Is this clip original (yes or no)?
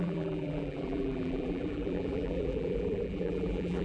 no